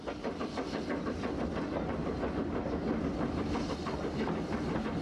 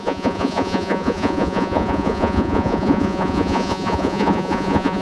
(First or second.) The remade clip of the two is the second